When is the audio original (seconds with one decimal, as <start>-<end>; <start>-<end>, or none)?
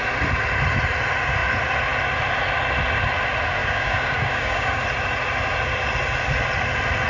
0.0-3.6; 4.8-7.1